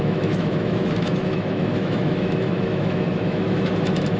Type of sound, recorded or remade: remade